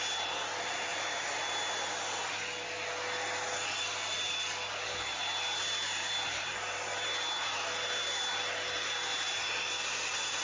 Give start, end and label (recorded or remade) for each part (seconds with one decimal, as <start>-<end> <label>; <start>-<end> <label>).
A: 0.0-10.4 recorded